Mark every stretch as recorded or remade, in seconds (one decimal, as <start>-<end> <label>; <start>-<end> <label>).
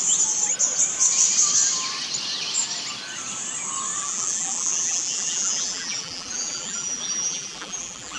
0.0-4.0 recorded; 4.0-8.2 remade